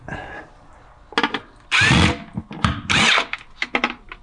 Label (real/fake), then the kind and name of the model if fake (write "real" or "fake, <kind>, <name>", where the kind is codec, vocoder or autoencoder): real